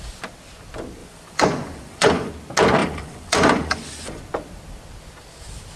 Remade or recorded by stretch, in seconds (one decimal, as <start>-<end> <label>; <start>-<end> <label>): 0.0-1.0 recorded; 1.0-2.3 remade; 2.3-2.8 recorded; 2.8-4.2 remade; 4.2-5.8 recorded